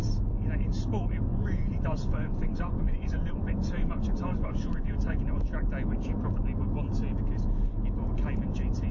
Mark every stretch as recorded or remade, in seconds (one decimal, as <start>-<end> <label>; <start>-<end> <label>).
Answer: 0.0-1.3 recorded; 1.3-5.2 remade; 5.2-8.9 recorded

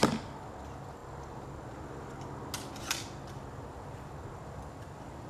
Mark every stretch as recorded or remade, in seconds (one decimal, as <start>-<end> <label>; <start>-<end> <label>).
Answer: 0.0-5.3 recorded

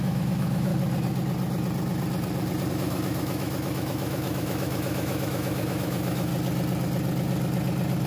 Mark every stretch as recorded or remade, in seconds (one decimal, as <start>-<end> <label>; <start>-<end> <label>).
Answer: 0.0-0.7 remade; 0.7-2.7 recorded; 2.7-6.3 remade; 6.3-8.1 recorded

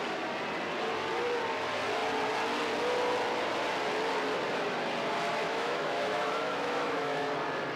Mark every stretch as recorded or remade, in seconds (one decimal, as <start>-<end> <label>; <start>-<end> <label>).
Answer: 0.0-5.4 recorded; 5.4-7.3 remade; 7.3-7.8 recorded

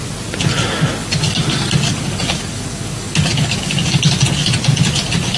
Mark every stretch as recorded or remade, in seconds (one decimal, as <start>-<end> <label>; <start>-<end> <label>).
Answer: 0.0-1.0 recorded; 1.0-4.2 remade; 4.2-5.4 recorded